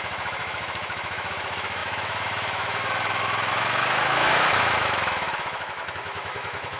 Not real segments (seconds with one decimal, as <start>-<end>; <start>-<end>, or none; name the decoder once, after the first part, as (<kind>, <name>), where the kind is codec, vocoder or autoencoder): 0.0-6.8 (autoencoder, DAC-VAE)